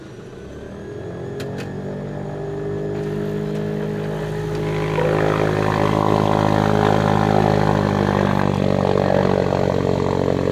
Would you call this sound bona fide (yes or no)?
yes